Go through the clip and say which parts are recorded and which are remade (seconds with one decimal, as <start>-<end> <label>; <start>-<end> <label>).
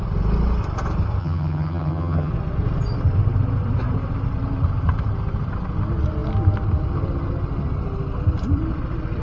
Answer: 0.0-1.2 recorded; 1.2-2.3 remade; 2.3-9.2 recorded